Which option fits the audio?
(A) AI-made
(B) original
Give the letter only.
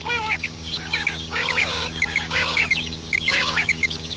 A